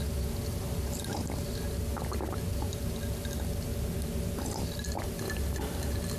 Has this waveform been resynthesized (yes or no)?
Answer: no